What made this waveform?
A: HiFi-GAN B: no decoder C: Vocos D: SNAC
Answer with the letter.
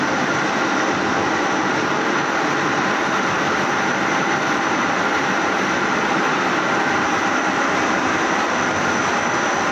B